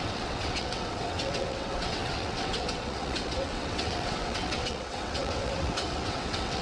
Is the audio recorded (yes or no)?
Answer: no